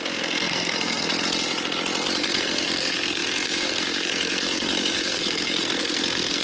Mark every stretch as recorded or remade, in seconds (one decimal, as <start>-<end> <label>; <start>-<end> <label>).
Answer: 0.0-1.1 remade; 1.1-2.2 recorded; 2.2-6.4 remade